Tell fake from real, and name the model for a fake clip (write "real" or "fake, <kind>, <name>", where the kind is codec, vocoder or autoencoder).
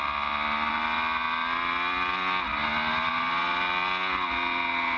real